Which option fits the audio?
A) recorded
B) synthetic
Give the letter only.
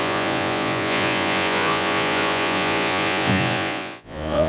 B